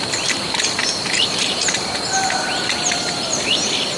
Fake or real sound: fake